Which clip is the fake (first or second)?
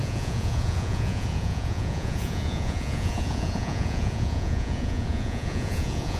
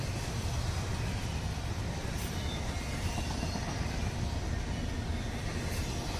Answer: first